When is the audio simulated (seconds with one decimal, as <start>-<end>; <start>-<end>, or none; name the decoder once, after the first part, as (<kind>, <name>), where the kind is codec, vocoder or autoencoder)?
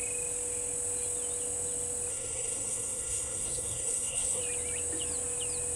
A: 2.1-4.4 (codec, SNAC)